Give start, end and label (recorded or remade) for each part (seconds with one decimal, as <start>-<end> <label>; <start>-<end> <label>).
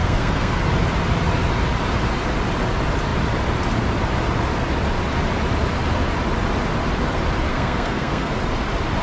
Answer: 0.0-0.6 remade; 0.6-7.5 recorded; 7.5-8.3 remade; 8.3-9.0 recorded